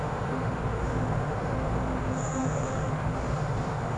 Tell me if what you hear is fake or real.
fake